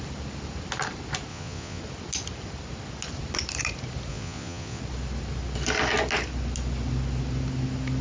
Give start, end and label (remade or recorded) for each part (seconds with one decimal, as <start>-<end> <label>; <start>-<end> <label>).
0.0-1.3 recorded; 1.3-1.8 remade; 1.8-4.1 recorded; 4.1-4.8 remade; 4.8-8.0 recorded